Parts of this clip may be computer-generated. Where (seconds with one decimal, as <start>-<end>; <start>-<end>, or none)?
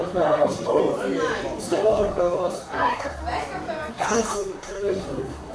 0.0-0.8; 1.6-3.2; 3.9-5.5